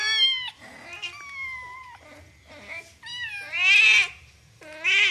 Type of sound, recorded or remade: recorded